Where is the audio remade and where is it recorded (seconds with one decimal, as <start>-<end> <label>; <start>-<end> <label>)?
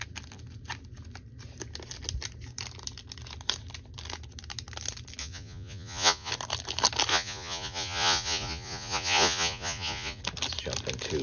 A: 0.0-5.2 recorded; 5.2-6.3 remade; 6.3-7.1 recorded; 7.1-10.2 remade; 10.2-11.2 recorded